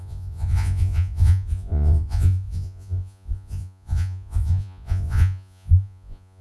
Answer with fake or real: fake